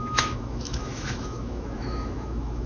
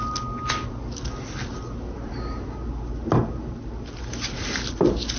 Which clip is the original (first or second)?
second